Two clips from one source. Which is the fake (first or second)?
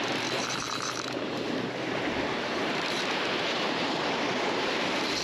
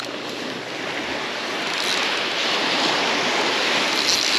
first